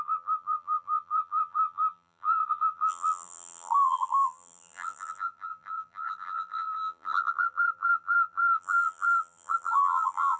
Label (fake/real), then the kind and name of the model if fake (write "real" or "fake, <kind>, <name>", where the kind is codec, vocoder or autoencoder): fake, vocoder, BigVGAN v2